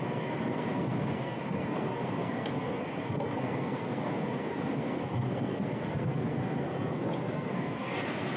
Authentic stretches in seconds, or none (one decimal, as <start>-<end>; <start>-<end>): none